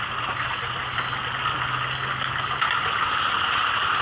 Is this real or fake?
real